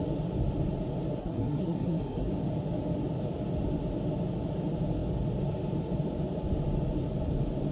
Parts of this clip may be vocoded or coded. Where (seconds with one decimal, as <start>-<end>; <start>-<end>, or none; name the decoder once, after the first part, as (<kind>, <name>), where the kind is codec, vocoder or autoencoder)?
1.2-2.3 (codec, SNAC)